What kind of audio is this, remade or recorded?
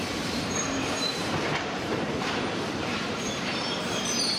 remade